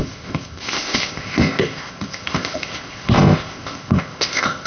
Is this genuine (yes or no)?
no